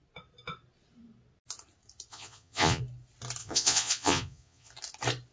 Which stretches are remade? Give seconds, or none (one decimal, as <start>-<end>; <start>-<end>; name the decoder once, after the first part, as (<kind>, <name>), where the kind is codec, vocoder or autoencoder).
2.1-2.8 (vocoder, Vocos); 3.4-4.7